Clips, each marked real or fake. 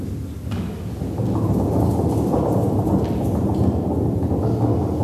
real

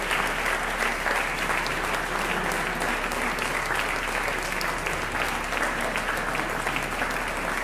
real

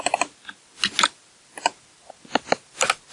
real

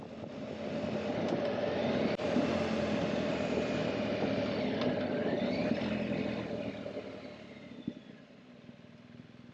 real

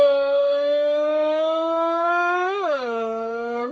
fake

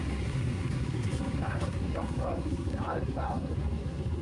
fake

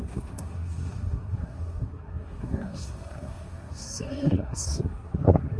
fake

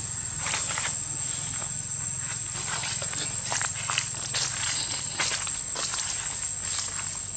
real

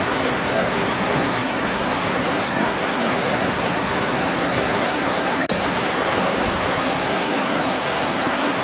fake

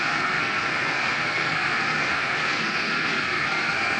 fake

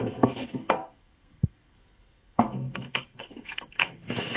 fake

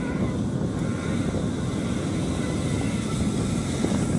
real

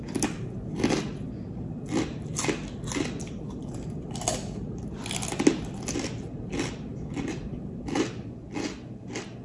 real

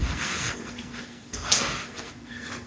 fake